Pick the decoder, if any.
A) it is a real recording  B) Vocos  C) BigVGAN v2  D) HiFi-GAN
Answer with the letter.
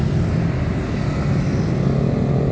A